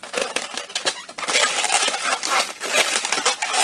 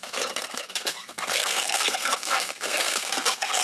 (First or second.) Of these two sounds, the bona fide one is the first